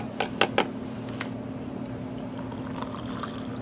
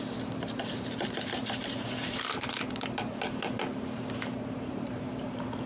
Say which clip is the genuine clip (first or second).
first